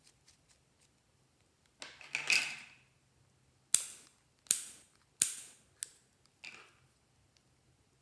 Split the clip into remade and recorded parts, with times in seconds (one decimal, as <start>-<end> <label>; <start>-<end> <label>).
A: 0.0-8.0 recorded